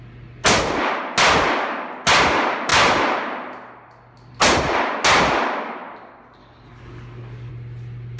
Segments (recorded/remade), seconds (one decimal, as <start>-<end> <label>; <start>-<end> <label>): 0.0-6.4 recorded; 6.4-7.5 remade; 7.5-8.2 recorded